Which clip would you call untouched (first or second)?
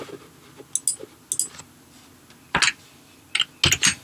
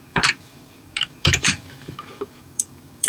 first